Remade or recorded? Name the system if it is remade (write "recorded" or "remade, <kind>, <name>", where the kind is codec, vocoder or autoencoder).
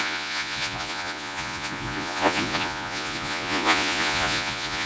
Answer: remade, vocoder, Vocos